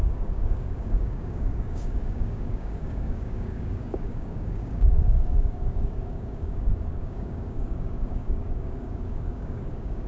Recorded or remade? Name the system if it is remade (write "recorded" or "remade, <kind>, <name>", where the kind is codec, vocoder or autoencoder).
remade, codec, DAC